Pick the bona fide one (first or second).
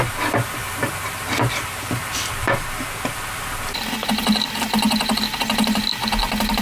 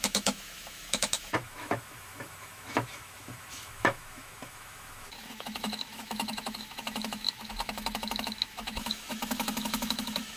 first